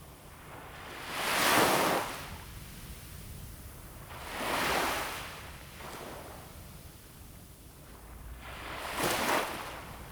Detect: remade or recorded recorded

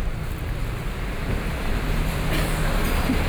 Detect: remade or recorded remade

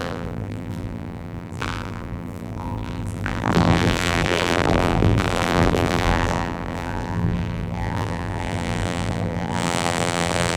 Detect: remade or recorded remade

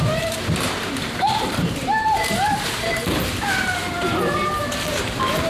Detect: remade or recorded remade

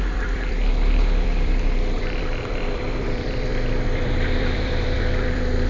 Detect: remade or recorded remade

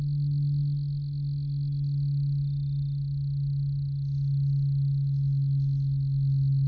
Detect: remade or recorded recorded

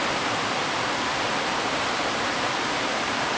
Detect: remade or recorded remade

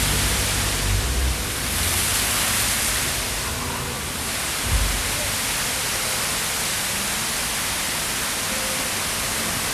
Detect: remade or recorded recorded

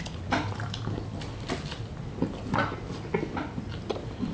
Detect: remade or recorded recorded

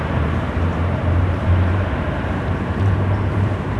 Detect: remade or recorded remade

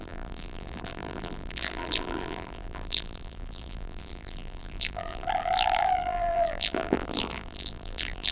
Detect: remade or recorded remade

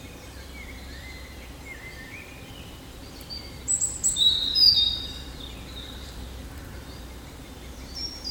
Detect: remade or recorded remade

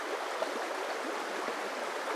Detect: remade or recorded recorded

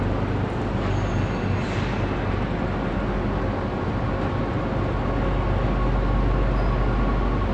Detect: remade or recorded recorded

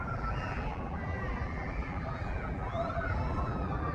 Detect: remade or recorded remade